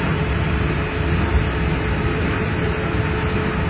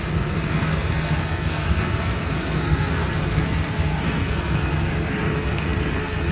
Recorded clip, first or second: first